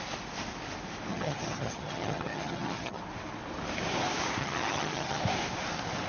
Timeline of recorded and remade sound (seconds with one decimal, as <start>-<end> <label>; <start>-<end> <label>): 0.0-1.1 recorded; 1.1-3.0 remade; 3.0-4.4 recorded; 4.4-5.2 remade; 5.2-6.1 recorded